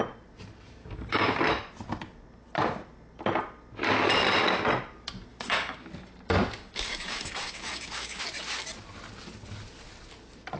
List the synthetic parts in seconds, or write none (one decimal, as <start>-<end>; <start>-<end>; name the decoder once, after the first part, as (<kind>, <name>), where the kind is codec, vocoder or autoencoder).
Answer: 0.8-1.4 (codec, DAC); 5.3-5.9; 6.6-8.2